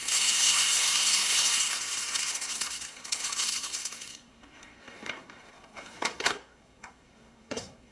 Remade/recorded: remade